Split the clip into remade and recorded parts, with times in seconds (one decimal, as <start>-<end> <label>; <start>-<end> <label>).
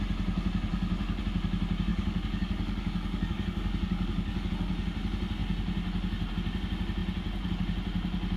0.0-0.7 recorded; 0.7-1.2 remade; 1.2-1.9 recorded; 1.9-4.5 remade; 4.5-8.4 recorded